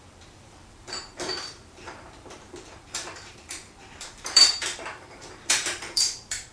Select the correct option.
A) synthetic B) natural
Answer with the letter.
A